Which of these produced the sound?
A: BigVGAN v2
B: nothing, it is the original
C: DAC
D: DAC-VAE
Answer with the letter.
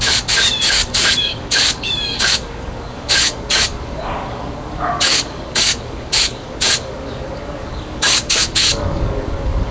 C